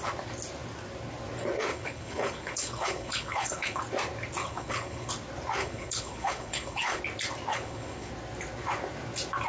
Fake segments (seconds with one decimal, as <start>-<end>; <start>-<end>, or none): 1.7-3.8; 4.4-5.1; 5.6-7.0; 7.5-8.1